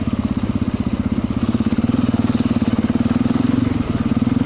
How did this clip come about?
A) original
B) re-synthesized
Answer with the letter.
A